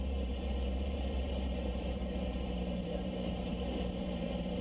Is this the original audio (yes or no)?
no